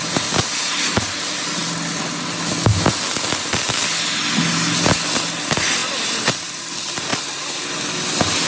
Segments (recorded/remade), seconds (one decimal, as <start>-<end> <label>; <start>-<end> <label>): 0.0-8.5 recorded